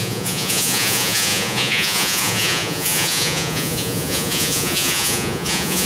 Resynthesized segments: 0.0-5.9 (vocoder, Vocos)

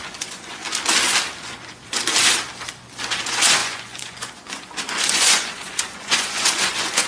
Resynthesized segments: 0.0-0.6 (vocoder, Vocos); 1.4-2.0; 3.0-7.1

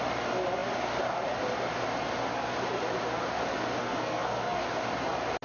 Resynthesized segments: 3.8-4.6 (codec, SNAC)

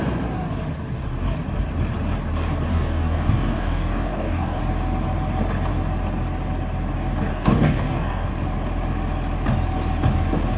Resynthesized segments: 2.7-4.6 (codec, DAC); 7.3-8.3